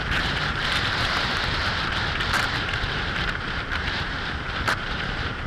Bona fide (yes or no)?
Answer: no